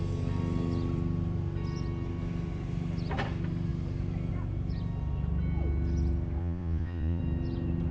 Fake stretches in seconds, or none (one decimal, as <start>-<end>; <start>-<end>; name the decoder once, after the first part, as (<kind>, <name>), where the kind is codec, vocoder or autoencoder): 6.4-7.2 (vocoder, Vocos)